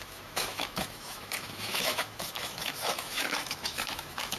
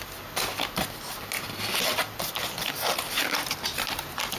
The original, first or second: second